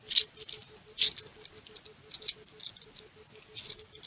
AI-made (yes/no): no